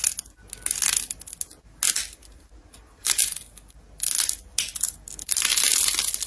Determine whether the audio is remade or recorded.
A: recorded